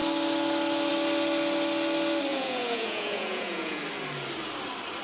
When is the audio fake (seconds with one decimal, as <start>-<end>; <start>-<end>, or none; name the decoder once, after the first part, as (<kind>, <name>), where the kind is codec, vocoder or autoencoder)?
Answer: 2.3-3.8 (vocoder, Vocos)